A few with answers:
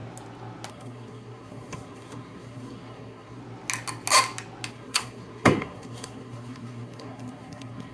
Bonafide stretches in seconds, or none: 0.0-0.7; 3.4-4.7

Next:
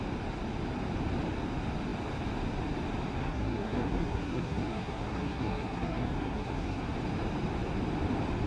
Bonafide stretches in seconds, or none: 0.0-3.2; 6.8-8.5

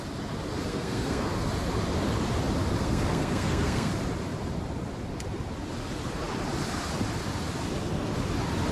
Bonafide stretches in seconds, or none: 0.0-0.6; 1.3-2.8; 3.9-8.7

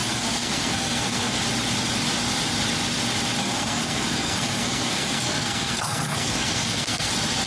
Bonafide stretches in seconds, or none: 1.4-3.4; 7.1-7.5

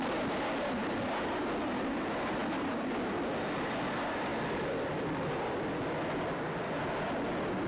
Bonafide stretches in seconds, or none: 0.0-7.7

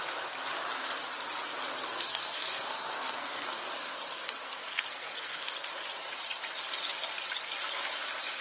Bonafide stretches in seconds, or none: 0.0-1.9; 5.7-8.4

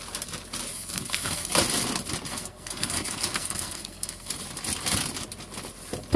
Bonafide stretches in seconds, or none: 0.0-0.7; 1.5-2.3; 4.3-6.2

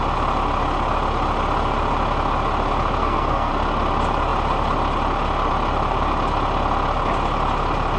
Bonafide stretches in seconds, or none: 0.0-3.0; 3.5-8.0